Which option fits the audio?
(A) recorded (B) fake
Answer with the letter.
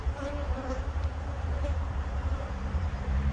B